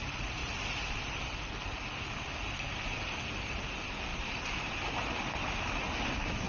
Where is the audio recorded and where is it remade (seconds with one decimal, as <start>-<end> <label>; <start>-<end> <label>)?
0.0-6.5 recorded